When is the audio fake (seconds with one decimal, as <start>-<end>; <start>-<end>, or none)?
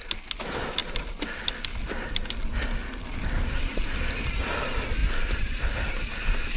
2.8-3.8; 5.0-5.6